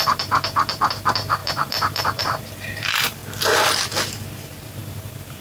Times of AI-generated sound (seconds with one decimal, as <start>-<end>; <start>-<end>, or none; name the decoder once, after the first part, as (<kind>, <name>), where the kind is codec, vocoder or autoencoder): 0.0-3.2 (vocoder, BigVGAN v2); 4.1-5.4